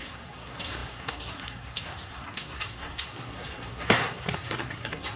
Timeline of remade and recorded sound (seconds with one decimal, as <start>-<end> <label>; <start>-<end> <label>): 0.0-5.2 remade